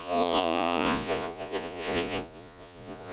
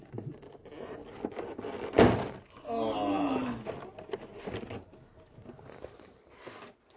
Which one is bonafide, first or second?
second